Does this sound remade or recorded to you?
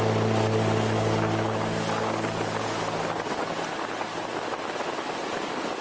recorded